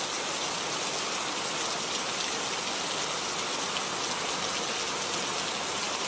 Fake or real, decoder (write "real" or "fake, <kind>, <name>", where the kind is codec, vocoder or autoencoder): real